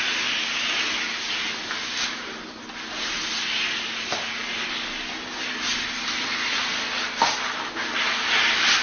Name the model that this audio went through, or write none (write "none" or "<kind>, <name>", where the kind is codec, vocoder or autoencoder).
none